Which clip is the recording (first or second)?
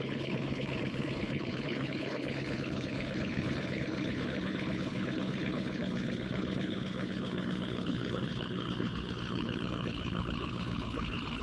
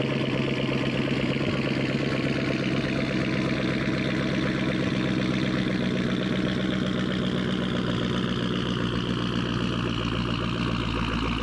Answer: second